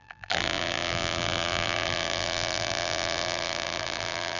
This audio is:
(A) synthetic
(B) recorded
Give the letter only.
A